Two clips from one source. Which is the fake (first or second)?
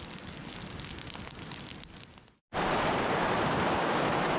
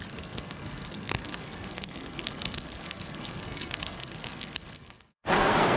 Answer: second